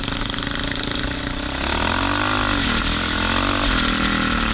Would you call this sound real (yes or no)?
yes